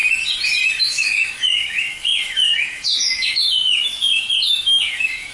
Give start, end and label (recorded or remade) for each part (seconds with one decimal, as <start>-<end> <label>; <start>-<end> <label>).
0.0-0.8 recorded; 0.8-5.3 remade